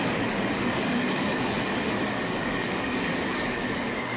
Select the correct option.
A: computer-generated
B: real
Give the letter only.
A